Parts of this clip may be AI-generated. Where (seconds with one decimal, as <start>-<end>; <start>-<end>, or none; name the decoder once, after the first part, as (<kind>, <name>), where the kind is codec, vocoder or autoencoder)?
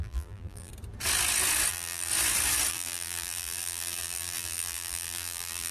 0.0-0.7 (vocoder, BigVGAN v2); 1.7-2.1; 2.7-5.7